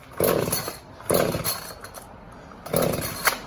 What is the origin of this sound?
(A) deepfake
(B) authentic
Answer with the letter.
B